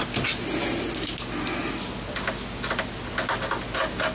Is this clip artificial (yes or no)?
no